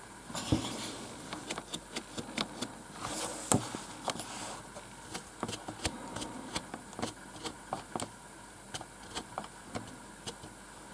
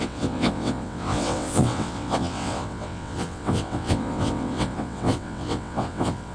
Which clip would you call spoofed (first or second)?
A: second